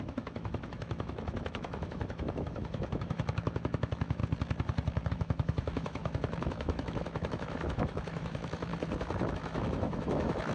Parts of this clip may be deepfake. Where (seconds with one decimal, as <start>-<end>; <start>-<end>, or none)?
0.0-4.2; 5.1-8.7; 9.3-10.5